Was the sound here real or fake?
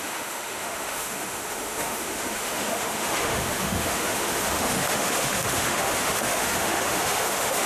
fake